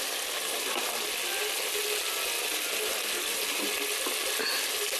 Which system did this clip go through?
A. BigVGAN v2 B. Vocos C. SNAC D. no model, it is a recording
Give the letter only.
D